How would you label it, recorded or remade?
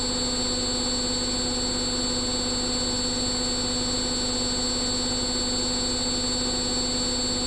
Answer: recorded